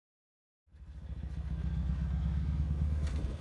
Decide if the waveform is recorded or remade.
remade